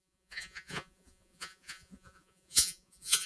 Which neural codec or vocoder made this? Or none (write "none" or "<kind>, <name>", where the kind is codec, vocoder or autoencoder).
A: vocoder, Vocos